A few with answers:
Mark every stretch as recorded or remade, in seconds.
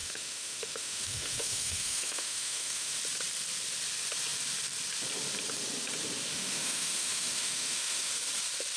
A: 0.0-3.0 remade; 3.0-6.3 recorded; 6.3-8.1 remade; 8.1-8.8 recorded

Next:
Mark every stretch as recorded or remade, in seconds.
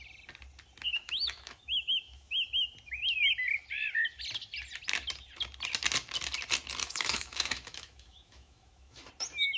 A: 0.0-0.9 recorded; 0.9-2.3 remade; 2.3-6.8 recorded; 6.8-9.1 remade; 9.1-9.6 recorded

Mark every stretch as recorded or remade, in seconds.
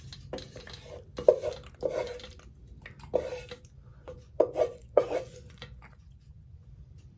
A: 0.0-3.9 recorded; 3.9-6.7 remade; 6.7-7.2 recorded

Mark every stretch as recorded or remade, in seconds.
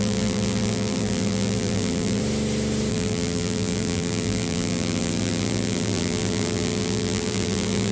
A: 0.0-2.2 remade; 2.2-2.9 recorded; 2.9-7.9 remade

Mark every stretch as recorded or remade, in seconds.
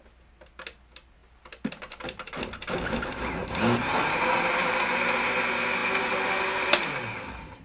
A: 0.0-3.4 recorded; 3.4-4.0 remade; 4.0-7.6 recorded